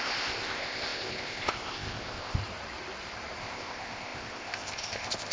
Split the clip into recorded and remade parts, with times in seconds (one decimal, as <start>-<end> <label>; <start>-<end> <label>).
0.0-2.4 remade; 2.4-3.4 recorded; 3.4-5.3 remade